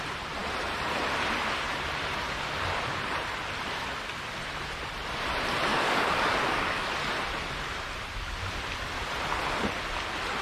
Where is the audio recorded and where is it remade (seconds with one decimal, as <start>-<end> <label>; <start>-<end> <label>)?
0.0-5.7 recorded; 5.7-6.9 remade; 6.9-10.4 recorded